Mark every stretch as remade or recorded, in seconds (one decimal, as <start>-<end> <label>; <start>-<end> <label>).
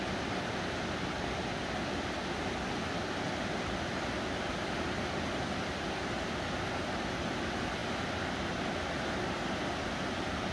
0.0-10.5 recorded